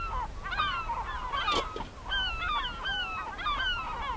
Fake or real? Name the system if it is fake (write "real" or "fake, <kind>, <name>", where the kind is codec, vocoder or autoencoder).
real